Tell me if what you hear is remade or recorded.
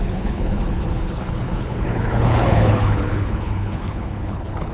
remade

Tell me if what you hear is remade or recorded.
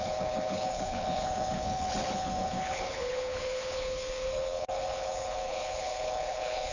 remade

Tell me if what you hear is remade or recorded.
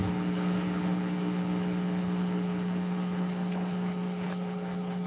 remade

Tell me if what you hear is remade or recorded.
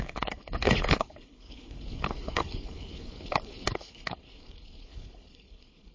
remade